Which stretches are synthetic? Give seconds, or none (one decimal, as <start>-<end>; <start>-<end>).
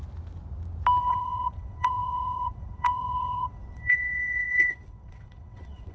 1.0-5.9